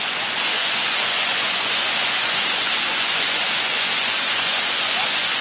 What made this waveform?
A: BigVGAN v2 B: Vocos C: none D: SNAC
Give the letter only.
B